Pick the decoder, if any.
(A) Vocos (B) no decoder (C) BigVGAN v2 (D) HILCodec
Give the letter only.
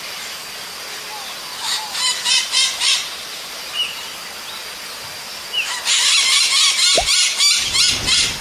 B